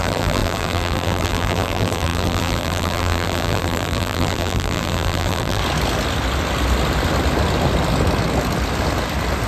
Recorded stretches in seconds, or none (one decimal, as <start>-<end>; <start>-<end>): 5.6-9.5